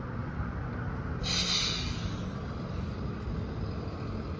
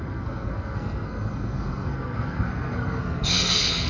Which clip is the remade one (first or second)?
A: second